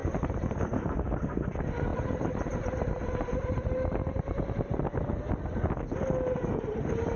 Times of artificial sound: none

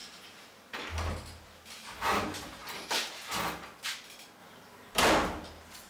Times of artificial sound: 0.0-0.8 (vocoder, BigVGAN v2); 2.6-3.1; 4.4-5.0

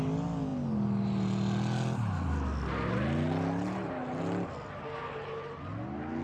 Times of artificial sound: none

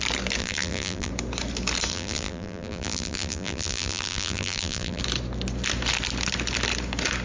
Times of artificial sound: 0.4-1.1 (vocoder, BigVGAN v2); 1.9-5.0

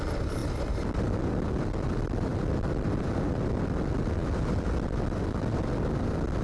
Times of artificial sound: 0.4-3.3 (vocoder, BigVGAN v2); 4.2-6.4

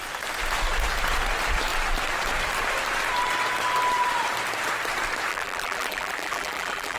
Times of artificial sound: 5.3-7.0 (vocoder, BigVGAN v2)